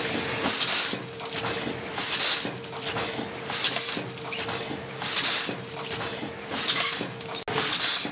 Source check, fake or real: real